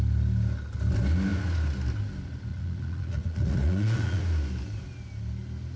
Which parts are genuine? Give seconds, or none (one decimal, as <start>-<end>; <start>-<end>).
0.0-2.5; 4.2-5.8